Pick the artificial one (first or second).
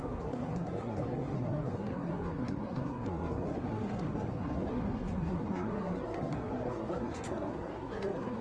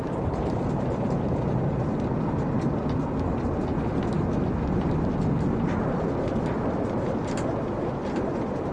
first